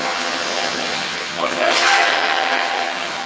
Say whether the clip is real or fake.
fake